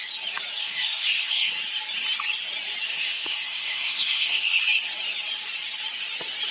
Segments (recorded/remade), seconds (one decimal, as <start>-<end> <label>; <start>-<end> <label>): 0.0-0.6 recorded; 0.6-1.5 remade; 1.5-2.9 recorded; 2.9-4.6 remade; 4.6-6.5 recorded